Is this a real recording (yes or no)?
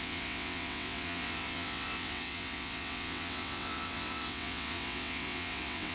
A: no